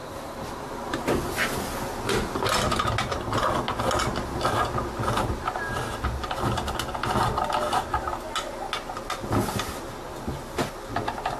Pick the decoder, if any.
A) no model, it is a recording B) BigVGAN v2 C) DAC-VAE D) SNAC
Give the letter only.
A